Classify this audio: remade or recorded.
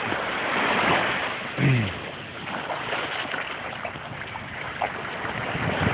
recorded